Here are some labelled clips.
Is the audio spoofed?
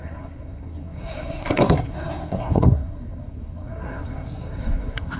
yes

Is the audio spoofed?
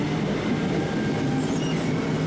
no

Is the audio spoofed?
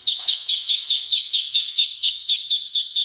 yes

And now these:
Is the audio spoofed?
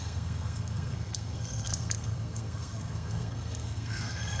yes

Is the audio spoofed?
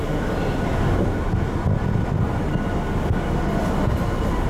no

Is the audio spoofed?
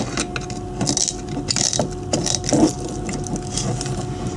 no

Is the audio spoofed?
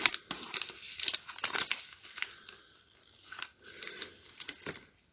no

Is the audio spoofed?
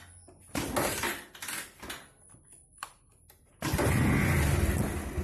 no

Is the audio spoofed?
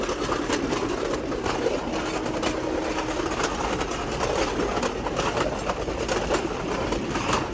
no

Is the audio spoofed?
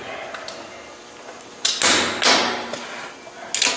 no